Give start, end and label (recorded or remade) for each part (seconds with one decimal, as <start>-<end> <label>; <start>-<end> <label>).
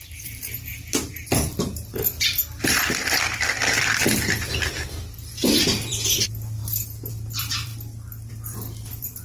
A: 0.0-6.6 remade; 6.6-7.1 recorded; 7.1-7.7 remade; 7.7-8.3 recorded; 8.3-9.2 remade